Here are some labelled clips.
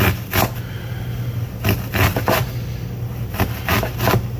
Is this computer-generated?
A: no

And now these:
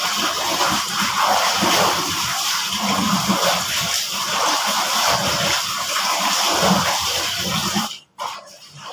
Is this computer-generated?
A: yes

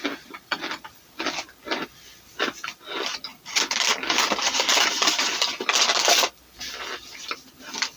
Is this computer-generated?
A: no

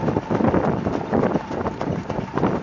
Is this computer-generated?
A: no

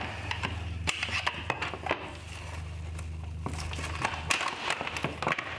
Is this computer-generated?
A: no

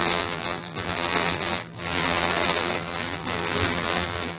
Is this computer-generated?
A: yes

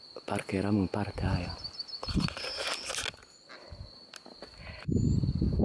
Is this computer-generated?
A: no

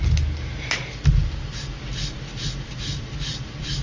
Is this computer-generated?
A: no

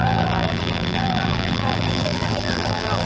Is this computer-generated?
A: yes